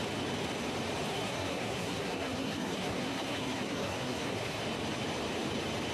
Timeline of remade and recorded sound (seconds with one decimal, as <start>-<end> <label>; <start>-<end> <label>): 0.0-1.1 recorded; 1.1-4.6 remade; 4.6-5.9 recorded